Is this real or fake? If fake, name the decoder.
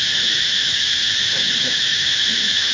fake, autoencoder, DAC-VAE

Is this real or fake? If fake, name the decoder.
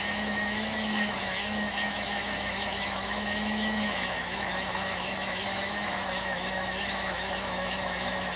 fake, autoencoder, DAC-VAE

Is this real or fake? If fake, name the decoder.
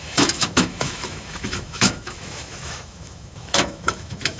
fake, autoencoder, DAC-VAE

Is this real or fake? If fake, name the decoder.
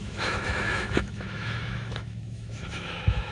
fake, autoencoder, DAC-VAE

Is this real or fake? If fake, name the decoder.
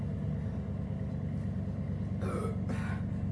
real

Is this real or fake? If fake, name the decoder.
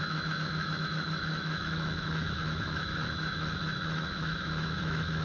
fake, autoencoder, DAC-VAE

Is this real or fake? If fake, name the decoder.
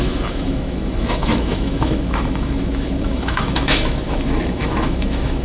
fake, autoencoder, DAC-VAE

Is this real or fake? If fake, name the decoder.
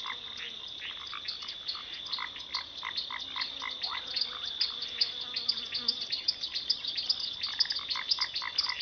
real